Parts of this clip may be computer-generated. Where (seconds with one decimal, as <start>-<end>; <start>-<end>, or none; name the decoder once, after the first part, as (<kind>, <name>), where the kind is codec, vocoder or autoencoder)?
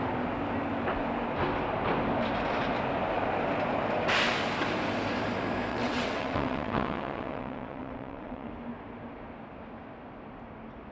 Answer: 5.7-8.5 (vocoder, WaveNeXt)